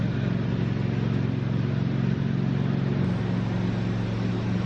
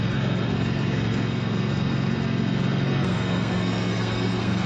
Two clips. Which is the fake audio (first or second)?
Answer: second